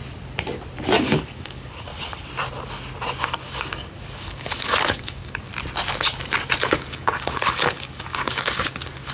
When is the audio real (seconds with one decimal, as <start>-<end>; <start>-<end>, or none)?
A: 0.0-1.0; 1.9-3.2; 5.5-6.7